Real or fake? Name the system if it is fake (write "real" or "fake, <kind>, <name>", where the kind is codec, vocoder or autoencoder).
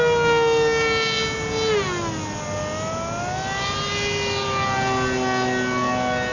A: real